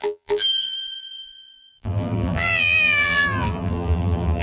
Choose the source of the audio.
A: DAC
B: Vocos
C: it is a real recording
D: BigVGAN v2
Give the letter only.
D